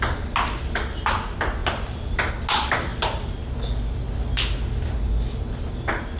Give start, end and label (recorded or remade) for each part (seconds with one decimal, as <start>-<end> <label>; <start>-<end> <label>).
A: 0.0-6.2 recorded

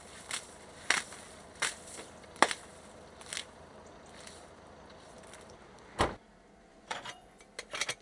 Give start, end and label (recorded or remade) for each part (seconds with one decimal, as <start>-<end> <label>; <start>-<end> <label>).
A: 0.0-6.7 recorded; 6.7-7.4 remade; 7.4-8.0 recorded